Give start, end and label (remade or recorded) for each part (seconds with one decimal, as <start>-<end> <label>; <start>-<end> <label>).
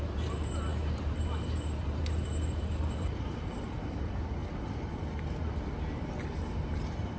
0.0-4.4 remade; 4.4-6.5 recorded; 6.5-7.2 remade